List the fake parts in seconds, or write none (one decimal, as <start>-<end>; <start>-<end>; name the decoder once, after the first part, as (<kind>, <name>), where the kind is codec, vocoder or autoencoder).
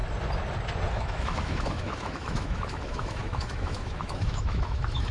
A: 0.9-5.1 (autoencoder, DAC-VAE)